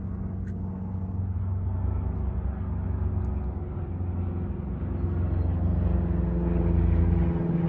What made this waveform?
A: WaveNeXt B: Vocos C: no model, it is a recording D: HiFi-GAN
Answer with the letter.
C